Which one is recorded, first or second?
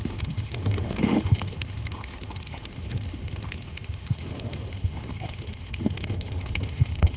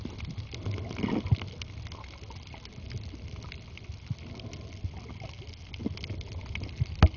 second